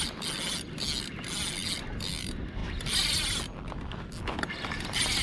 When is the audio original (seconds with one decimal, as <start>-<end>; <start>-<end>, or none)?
0.0-5.2

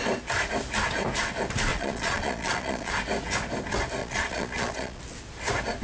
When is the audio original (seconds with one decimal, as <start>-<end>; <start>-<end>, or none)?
0.0-1.7; 2.9-4.0; 5.0-5.8

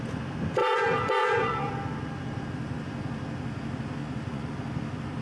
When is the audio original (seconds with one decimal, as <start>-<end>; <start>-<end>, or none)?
0.0-0.6; 1.7-4.0; 4.5-5.2

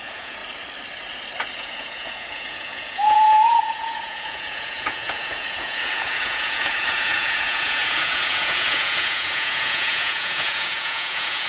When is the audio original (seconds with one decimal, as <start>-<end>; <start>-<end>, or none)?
0.4-1.6

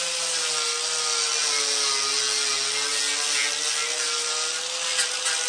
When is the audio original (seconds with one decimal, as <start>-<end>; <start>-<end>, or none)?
0.0-5.5

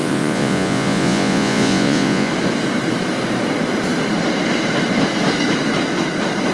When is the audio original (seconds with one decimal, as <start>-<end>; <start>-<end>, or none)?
2.3-6.5

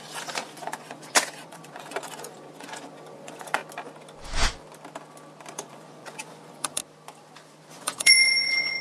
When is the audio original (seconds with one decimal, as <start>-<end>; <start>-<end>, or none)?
3.6-5.5; 6.8-7.7

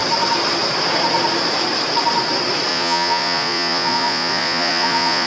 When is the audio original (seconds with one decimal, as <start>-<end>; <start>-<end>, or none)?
0.0-2.7